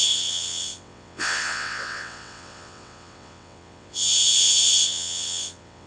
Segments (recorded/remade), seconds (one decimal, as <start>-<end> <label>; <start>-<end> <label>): 0.0-5.9 remade